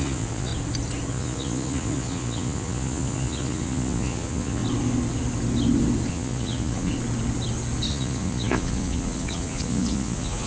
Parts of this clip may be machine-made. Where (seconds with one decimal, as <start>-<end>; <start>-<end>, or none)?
0.0-0.5; 1.1-4.6; 6.1-6.9; 7.9-10.5